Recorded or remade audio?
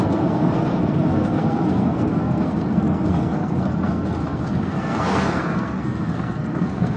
remade